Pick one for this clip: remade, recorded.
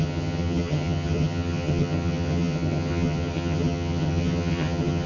remade